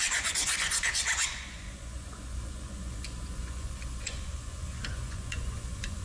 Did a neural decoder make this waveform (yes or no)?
yes